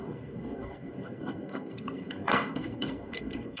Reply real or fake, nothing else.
fake